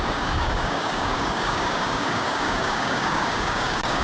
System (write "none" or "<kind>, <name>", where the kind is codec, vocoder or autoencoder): codec, DAC